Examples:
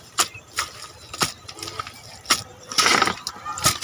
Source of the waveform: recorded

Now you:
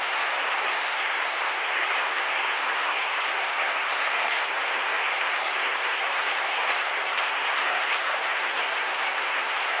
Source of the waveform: remade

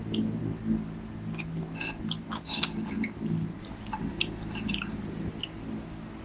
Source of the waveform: recorded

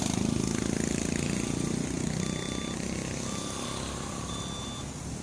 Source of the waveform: recorded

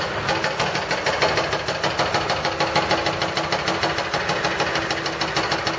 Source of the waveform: recorded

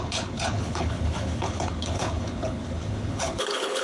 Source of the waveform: remade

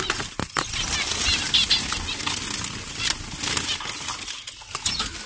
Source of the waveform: recorded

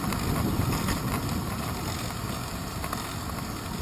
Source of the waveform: recorded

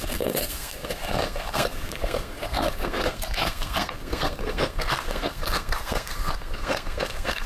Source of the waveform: remade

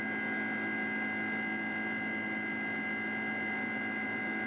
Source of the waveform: recorded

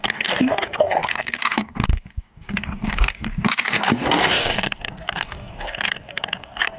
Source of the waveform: remade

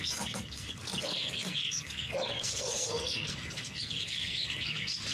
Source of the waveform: remade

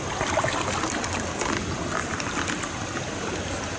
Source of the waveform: recorded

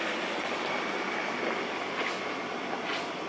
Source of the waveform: recorded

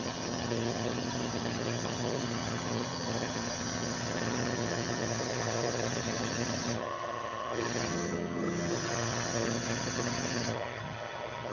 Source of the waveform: remade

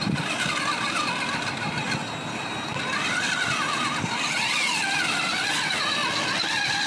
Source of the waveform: recorded